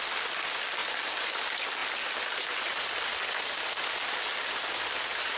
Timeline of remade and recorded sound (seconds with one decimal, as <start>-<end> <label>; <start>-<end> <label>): 0.0-0.8 recorded; 0.8-1.4 remade; 1.4-5.4 recorded